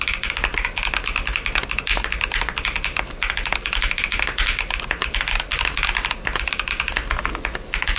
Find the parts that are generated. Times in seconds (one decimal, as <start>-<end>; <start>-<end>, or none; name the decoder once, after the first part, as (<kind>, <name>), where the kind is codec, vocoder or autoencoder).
none